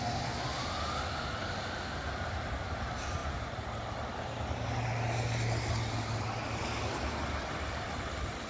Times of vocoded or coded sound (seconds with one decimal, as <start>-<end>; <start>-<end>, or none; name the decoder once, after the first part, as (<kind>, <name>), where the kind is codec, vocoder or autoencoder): none